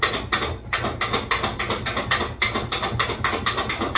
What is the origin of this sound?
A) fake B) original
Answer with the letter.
B